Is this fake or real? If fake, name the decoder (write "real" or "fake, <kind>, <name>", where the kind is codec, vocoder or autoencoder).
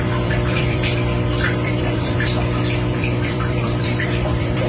fake, vocoder, BigVGAN v2